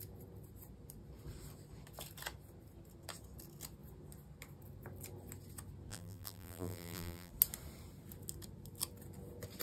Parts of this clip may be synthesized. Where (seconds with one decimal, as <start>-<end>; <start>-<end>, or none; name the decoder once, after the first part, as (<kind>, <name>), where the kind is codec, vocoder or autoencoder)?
5.9-7.3 (vocoder, BigVGAN v2)